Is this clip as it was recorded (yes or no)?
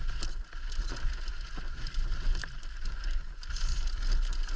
yes